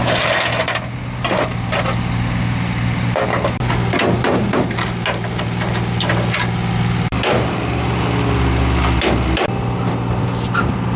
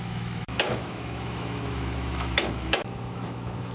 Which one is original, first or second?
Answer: first